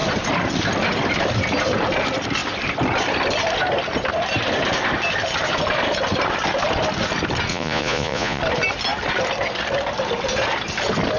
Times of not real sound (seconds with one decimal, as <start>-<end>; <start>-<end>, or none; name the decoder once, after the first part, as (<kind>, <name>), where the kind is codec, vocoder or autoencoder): 7.5-8.4 (vocoder, Vocos)